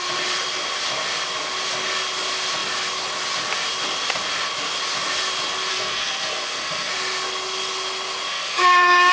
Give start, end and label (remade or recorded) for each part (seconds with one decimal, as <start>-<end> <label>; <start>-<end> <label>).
0.0-5.7 recorded; 5.7-6.9 remade; 6.9-8.3 recorded; 8.3-9.1 remade